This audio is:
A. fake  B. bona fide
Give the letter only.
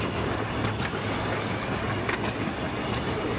B